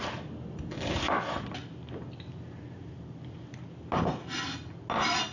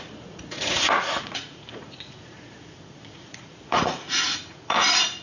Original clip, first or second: first